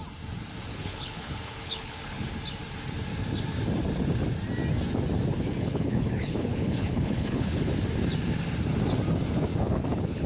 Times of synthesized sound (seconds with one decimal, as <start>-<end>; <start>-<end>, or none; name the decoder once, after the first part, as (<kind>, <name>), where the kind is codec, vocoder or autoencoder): 0.7-2.2 (codec, HILCodec); 5.3-7.7; 9.5-10.3